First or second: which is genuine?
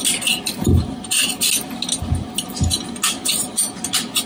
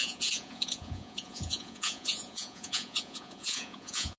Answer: first